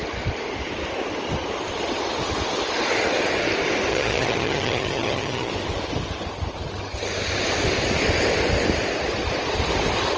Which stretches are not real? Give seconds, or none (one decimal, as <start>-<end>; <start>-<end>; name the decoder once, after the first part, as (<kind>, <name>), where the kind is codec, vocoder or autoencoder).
3.9-5.5 (vocoder, HiFi-GAN)